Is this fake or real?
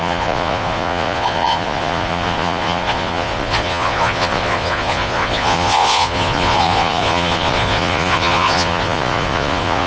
fake